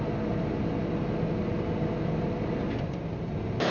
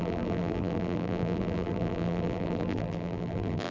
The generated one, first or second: second